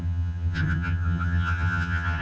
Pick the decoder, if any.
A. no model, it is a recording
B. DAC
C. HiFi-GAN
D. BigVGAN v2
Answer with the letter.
C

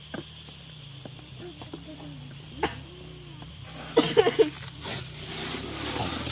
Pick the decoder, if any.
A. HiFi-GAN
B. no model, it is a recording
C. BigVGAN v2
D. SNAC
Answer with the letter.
C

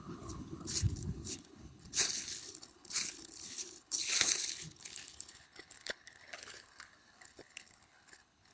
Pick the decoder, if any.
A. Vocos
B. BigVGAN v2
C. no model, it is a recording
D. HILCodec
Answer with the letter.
D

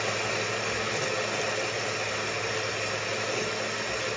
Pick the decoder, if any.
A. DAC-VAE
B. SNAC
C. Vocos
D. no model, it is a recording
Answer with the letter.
D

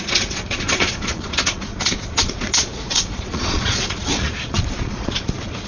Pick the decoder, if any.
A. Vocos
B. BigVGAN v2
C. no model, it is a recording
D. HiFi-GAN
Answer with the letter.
A